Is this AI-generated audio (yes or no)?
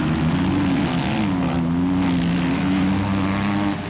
no